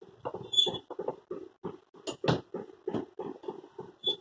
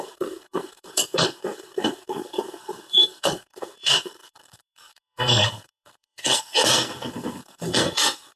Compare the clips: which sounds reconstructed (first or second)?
second